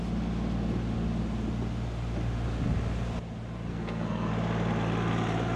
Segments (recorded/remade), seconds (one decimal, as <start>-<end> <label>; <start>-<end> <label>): 0.0-3.7 recorded; 3.7-4.3 remade; 4.3-5.6 recorded